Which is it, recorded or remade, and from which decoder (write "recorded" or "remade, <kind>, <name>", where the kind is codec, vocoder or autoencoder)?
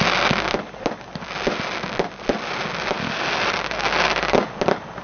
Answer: recorded